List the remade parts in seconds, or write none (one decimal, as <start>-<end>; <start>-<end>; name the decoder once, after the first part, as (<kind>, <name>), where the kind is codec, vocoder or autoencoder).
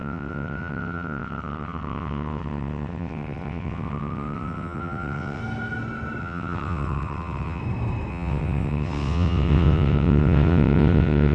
0.0-5.4 (vocoder, WaveNeXt); 6.2-7.6; 8.1-11.3